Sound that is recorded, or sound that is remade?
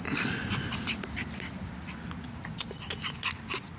recorded